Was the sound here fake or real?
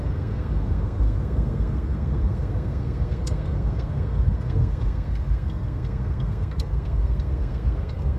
fake